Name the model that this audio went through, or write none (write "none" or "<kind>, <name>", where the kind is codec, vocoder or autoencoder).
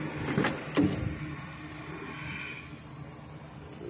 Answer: none